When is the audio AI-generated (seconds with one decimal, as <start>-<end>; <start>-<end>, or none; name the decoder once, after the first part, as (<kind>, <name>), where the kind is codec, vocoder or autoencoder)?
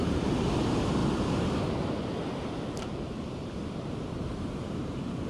0.0-1.0 (vocoder, BigVGAN v2); 3.9-5.3